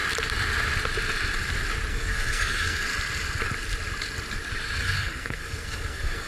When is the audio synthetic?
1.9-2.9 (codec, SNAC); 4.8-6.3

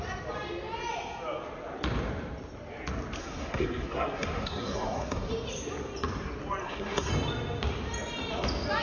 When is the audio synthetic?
3.2-5.3 (codec, SNAC); 6.6-7.1

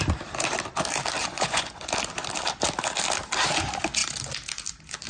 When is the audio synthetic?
1.2-1.8 (vocoder, Vocos)

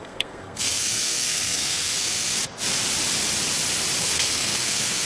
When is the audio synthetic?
0.0-2.4 (codec, SNAC); 4.0-5.1

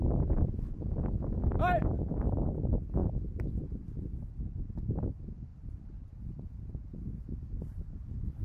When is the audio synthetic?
none

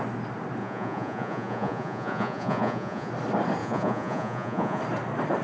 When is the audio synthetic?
0.6-3.1 (vocoder, Vocos); 3.6-4.8